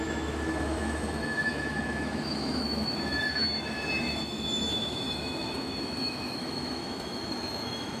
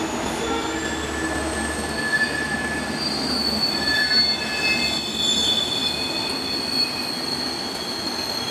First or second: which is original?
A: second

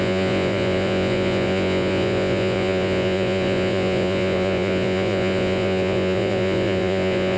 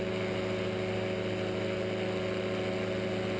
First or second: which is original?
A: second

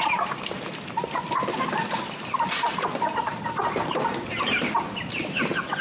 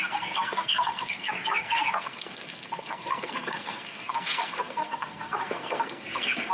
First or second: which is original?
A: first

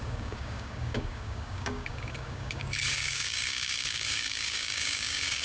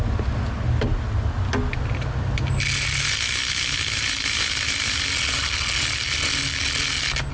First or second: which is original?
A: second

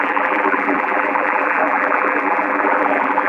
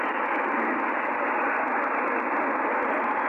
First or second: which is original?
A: second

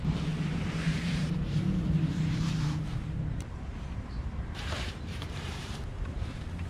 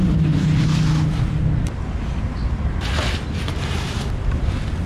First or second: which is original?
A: second